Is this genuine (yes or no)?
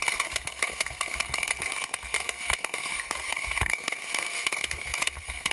no